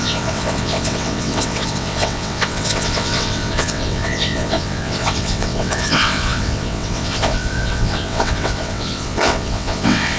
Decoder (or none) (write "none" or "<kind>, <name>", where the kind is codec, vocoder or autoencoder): vocoder, WaveNeXt